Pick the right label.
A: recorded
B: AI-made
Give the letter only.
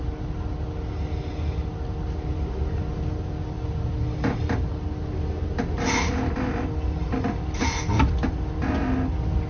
A